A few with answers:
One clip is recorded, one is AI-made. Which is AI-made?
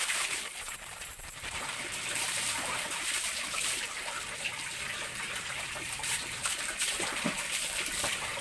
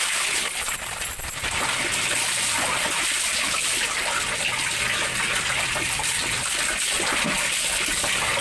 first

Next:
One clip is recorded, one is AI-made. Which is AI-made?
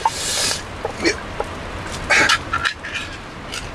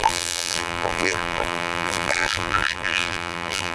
second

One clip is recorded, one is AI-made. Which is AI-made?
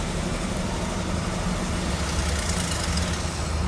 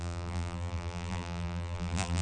second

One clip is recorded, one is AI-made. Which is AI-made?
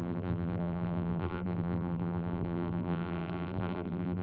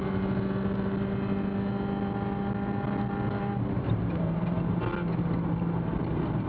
first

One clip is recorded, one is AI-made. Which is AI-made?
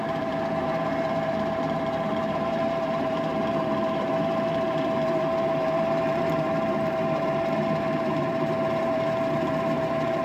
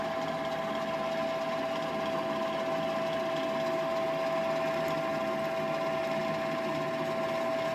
first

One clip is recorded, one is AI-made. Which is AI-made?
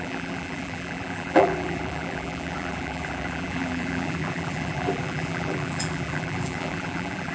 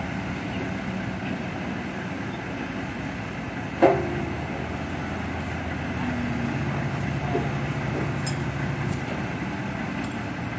first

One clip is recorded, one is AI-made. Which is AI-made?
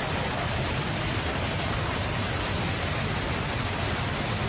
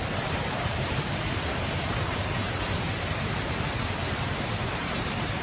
second